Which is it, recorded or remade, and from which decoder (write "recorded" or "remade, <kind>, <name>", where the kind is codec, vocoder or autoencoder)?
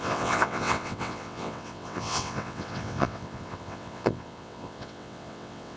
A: remade, vocoder, WaveNeXt